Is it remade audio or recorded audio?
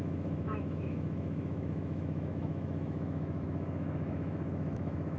remade